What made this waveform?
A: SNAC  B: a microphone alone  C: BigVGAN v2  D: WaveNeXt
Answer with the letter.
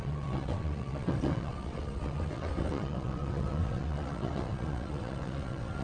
D